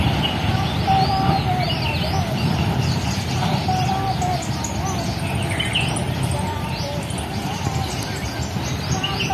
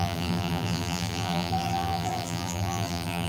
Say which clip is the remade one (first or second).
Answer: second